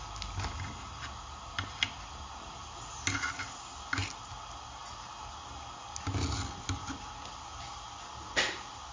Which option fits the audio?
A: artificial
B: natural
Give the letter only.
B